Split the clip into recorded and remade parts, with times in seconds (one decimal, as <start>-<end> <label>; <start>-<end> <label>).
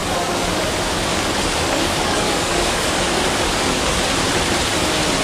0.0-0.7 remade; 0.7-1.1 recorded; 1.1-4.0 remade; 4.0-5.2 recorded